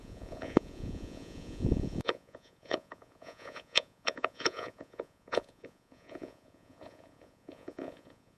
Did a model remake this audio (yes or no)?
yes